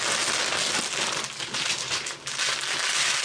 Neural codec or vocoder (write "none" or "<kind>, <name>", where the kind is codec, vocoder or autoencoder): none